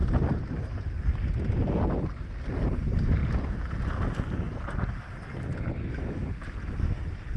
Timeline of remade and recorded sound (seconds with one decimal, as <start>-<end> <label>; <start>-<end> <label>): 0.0-7.4 recorded